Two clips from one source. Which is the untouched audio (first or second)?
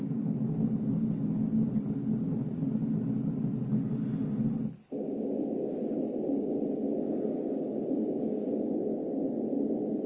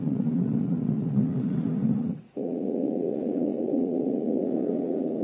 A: first